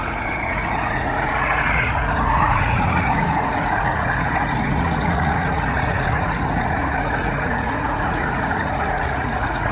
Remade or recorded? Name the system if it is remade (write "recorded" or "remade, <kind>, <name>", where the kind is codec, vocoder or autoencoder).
remade, vocoder, Vocos